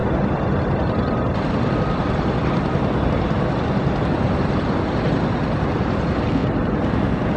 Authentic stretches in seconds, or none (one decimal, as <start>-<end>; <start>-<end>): 0.0-7.4